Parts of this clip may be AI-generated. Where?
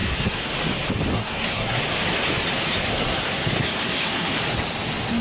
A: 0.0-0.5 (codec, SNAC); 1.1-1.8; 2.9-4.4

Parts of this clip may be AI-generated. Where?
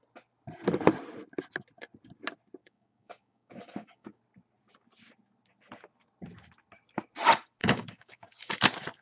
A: 2.6-4.2 (codec, DAC); 7.6-8.6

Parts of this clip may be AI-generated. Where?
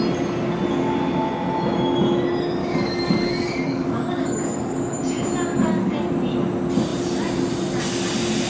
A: 2.6-5.0 (codec, DAC)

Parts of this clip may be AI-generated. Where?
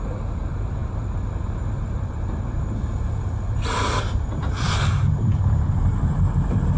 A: 0.0-6.8 (vocoder, BigVGAN v2)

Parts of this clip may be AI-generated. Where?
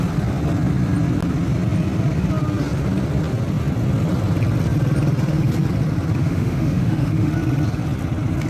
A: 6.2-7.3 (autoencoder, DAC-VAE)